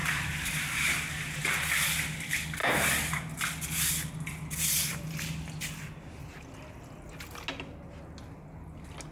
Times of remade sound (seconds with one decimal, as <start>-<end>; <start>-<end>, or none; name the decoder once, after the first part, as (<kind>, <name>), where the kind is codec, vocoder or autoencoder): 0.0-0.9 (vocoder, BigVGAN v2)